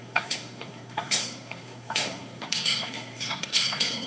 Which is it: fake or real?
fake